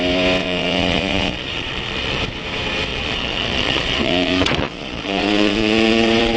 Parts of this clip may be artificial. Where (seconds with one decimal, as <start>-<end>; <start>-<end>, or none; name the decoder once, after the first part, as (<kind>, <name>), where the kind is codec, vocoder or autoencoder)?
0.4-2.2 (vocoder, Vocos); 2.9-6.4